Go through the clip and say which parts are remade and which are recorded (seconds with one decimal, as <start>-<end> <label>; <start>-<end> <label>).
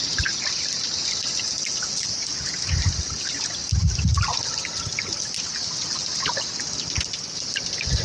0.0-8.0 recorded